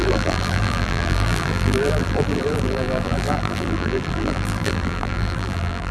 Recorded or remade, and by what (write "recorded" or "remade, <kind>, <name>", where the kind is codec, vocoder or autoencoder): remade, vocoder, BigVGAN v2